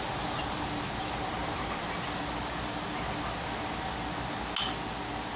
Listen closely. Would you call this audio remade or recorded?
recorded